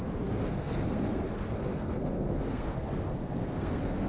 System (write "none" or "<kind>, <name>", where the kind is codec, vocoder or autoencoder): codec, SNAC